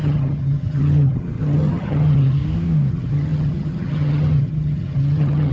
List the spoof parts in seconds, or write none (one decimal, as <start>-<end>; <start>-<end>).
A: 0.0-2.4; 2.9-5.5